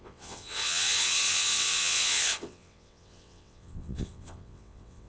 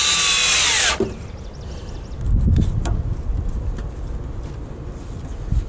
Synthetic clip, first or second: first